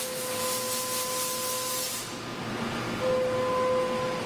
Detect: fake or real real